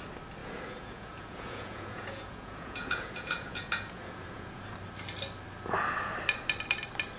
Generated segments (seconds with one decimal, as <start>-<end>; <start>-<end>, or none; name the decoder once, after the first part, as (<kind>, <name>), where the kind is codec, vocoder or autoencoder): 0.4-4.7 (vocoder, Vocos)